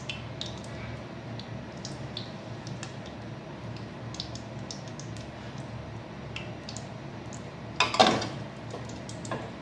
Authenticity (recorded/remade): recorded